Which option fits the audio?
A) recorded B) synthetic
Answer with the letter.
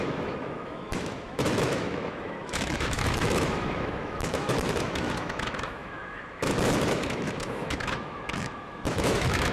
B